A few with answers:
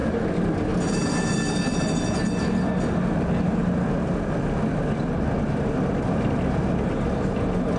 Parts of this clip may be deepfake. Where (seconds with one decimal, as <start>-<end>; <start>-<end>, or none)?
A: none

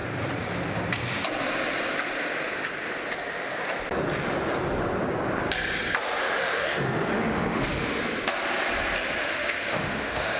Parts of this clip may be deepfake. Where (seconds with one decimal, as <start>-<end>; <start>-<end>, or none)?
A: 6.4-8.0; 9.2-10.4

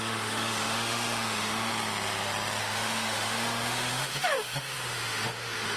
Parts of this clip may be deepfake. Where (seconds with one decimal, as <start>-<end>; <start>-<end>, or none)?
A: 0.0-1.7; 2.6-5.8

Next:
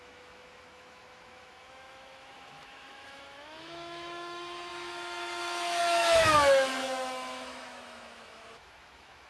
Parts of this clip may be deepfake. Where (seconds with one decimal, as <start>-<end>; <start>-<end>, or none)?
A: 0.0-9.3